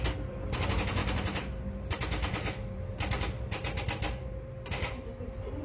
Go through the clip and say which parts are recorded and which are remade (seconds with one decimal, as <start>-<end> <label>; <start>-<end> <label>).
0.0-5.6 recorded